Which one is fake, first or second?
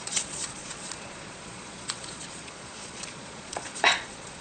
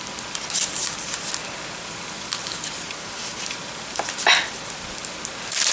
first